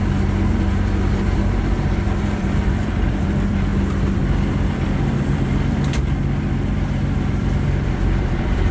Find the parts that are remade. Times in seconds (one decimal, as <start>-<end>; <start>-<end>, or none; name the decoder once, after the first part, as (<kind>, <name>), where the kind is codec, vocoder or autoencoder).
1.2-8.7 (vocoder, BigVGAN v2)